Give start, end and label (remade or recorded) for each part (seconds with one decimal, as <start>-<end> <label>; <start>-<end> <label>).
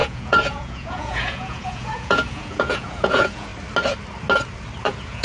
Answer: 0.0-3.5 remade; 3.5-4.8 recorded; 4.8-5.2 remade